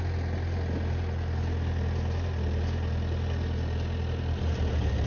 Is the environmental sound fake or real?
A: real